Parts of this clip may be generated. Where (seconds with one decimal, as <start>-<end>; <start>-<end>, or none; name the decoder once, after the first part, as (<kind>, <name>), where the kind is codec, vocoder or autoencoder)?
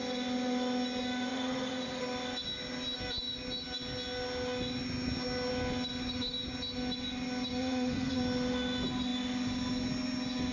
1.3-2.0 (vocoder, Vocos); 7.6-8.2